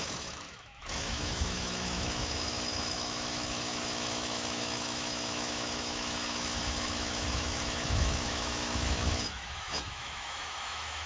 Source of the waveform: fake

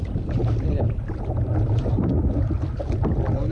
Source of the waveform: real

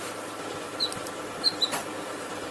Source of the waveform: real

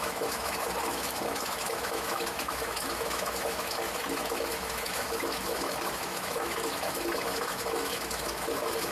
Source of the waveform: fake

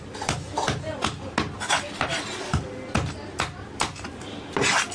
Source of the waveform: real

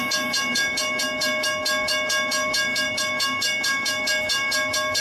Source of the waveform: fake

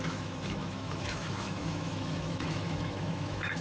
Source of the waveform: fake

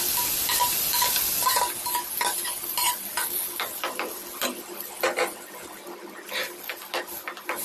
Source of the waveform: real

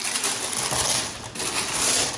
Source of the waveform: real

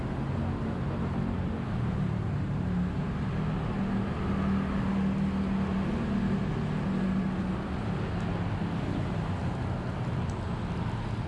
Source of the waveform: real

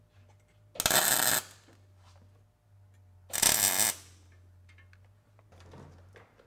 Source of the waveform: real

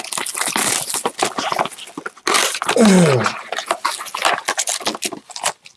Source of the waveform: real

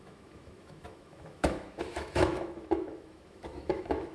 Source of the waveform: fake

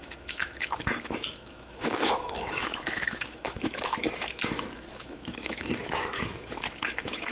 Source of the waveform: fake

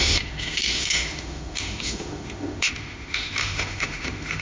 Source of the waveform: fake